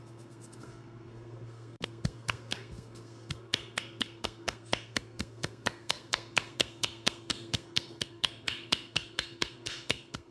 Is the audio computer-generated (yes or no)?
yes